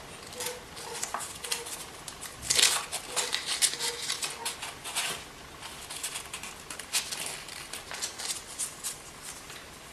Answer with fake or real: real